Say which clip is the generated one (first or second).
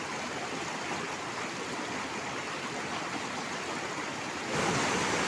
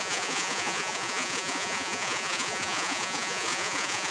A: second